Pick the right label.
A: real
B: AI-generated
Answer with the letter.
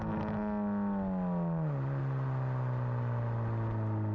A